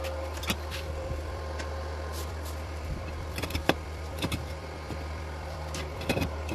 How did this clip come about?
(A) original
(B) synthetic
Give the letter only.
B